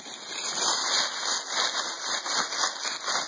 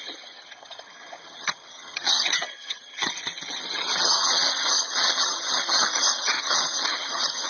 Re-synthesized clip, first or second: second